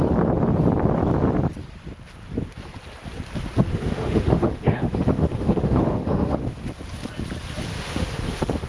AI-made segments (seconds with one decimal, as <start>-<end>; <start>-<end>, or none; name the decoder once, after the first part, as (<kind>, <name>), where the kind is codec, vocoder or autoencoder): 3.7-6.4 (autoencoder, DAC-VAE); 7.7-8.7